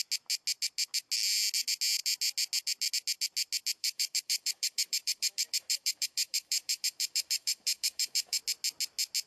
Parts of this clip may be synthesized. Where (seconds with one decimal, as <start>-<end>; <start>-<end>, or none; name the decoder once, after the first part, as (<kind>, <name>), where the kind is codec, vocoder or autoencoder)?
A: 3.8-8.4 (autoencoder, DAC-VAE)

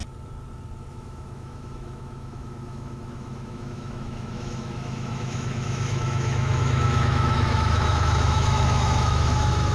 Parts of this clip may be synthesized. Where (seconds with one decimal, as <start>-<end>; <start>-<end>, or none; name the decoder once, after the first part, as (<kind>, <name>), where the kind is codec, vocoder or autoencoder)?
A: 0.9-9.7 (autoencoder, DAC-VAE)

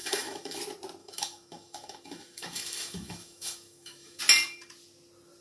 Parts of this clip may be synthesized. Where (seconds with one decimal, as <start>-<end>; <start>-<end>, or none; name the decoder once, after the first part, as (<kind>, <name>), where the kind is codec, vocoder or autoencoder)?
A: 0.0-0.6 (autoencoder, DAC-VAE); 1.0-4.2

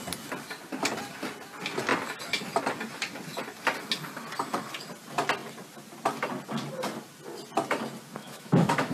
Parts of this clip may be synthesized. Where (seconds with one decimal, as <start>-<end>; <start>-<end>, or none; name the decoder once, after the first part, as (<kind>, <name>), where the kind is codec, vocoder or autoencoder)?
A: 8.2-8.9 (autoencoder, DAC-VAE)

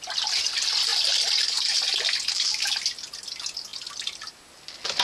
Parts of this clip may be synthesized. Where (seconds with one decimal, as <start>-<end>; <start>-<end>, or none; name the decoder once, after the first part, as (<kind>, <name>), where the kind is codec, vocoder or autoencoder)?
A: none

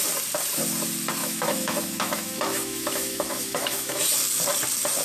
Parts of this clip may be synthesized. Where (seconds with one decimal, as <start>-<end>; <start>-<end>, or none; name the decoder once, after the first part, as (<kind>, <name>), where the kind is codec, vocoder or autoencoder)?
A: 1.2-4.1 (autoencoder, DAC-VAE)